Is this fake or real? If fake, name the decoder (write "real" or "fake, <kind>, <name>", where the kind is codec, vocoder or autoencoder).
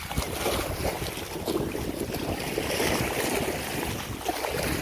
real